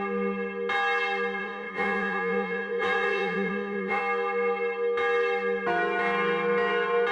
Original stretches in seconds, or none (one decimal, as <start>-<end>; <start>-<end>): 0.0-1.4; 4.0-7.1